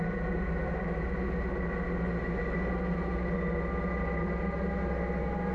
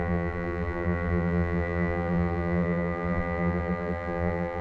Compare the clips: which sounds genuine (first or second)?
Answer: first